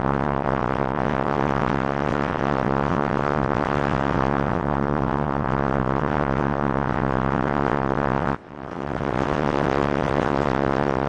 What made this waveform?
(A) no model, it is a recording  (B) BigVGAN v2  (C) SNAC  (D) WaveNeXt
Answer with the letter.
D